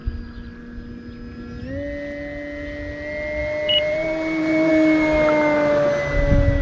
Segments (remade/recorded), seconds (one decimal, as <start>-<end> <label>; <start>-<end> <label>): 0.0-3.4 recorded; 3.4-4.7 remade; 4.7-6.6 recorded